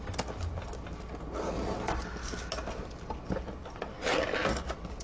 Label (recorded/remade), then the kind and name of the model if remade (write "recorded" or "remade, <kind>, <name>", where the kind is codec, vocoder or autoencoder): recorded